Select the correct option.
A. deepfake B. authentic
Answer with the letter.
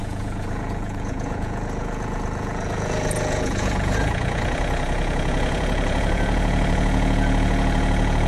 A